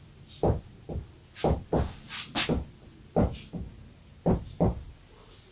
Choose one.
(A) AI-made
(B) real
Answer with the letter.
B